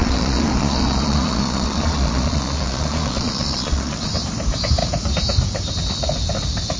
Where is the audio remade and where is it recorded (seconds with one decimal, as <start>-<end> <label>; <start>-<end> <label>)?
0.0-4.1 remade; 4.1-6.8 recorded